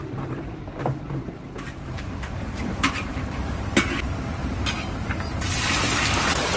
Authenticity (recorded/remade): remade